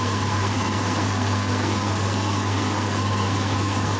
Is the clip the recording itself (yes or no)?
no